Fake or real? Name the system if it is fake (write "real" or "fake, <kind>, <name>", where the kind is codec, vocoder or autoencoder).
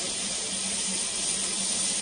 real